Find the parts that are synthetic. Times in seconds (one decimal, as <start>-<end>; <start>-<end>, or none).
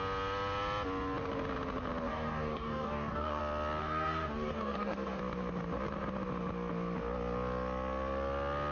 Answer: 2.1-3.4; 3.8-5.2